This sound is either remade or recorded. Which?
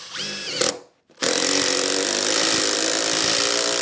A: recorded